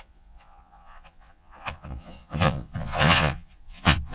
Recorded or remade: remade